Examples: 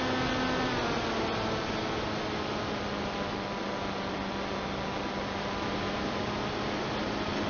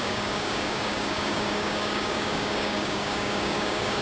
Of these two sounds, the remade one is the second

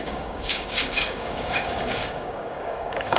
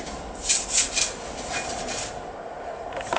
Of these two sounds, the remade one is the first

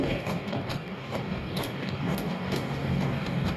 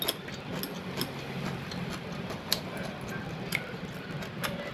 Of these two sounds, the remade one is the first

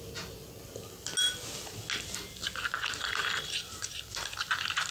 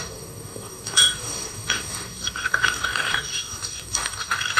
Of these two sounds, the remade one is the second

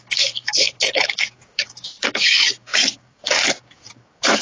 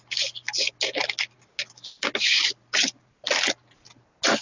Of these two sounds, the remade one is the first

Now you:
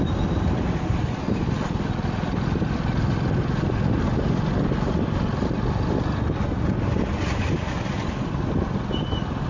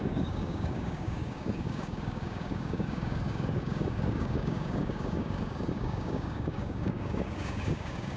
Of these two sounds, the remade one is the second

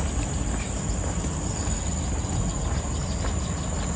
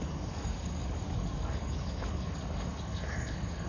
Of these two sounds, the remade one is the second